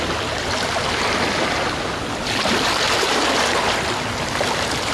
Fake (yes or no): no